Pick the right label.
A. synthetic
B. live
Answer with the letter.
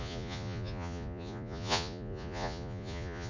A